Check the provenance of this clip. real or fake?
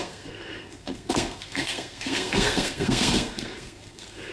fake